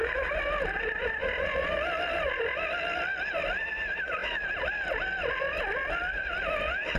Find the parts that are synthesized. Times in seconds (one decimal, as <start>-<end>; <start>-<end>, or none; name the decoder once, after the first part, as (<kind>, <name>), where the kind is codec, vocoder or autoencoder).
4.2-5.6 (vocoder, BigVGAN v2)